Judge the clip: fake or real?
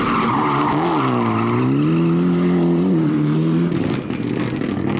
real